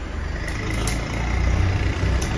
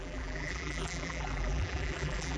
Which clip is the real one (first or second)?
first